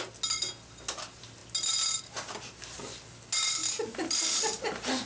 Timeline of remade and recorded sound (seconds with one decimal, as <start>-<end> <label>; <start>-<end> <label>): 0.0-5.1 recorded